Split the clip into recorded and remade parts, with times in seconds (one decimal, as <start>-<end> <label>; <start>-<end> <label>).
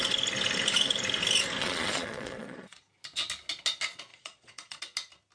0.0-1.6 recorded; 1.6-2.8 remade; 2.8-4.1 recorded; 4.1-4.8 remade; 4.8-5.3 recorded